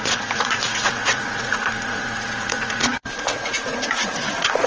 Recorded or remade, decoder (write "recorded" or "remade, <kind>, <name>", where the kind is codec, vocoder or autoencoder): remade, vocoder, Vocos